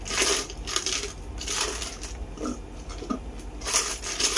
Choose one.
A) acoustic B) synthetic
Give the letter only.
A